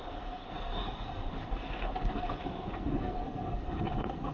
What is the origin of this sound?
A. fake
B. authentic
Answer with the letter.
A